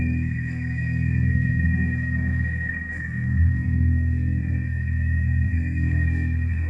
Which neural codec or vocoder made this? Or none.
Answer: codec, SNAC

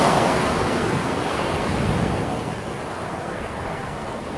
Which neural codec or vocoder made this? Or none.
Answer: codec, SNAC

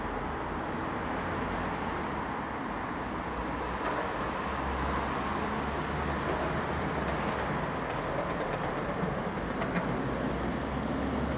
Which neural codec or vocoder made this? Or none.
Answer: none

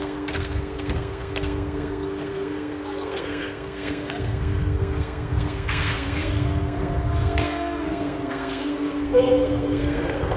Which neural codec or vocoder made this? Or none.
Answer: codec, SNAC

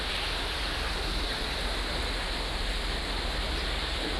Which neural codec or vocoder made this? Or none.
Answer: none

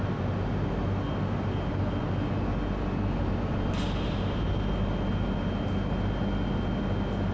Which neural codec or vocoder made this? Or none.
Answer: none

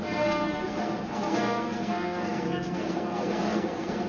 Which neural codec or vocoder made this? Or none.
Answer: codec, SNAC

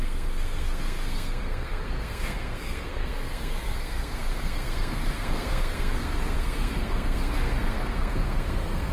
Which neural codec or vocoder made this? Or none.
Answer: codec, SNAC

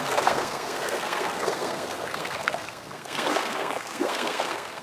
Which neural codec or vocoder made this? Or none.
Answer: codec, SNAC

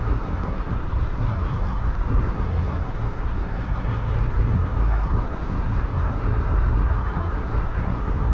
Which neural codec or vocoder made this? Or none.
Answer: codec, SNAC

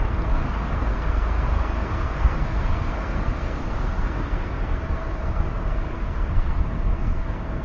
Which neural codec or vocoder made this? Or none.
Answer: codec, SNAC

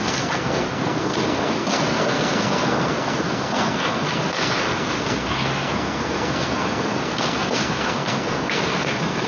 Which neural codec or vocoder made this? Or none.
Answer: codec, SNAC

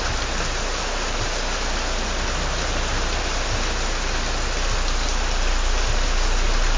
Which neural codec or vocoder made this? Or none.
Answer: none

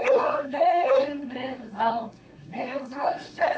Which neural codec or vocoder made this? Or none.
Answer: codec, SNAC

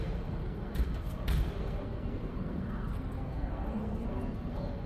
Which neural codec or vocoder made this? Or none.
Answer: codec, SNAC